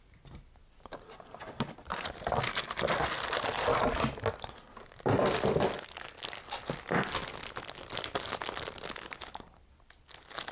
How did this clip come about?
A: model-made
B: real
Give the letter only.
B